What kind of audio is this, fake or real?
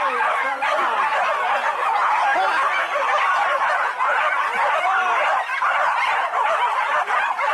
fake